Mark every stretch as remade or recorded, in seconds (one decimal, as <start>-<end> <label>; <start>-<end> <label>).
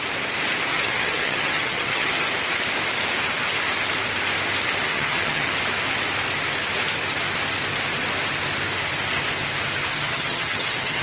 0.0-0.7 recorded; 0.7-2.1 remade; 2.1-4.9 recorded; 4.9-5.5 remade; 5.5-9.9 recorded; 9.9-11.0 remade